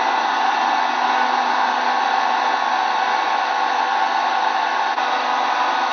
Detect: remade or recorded recorded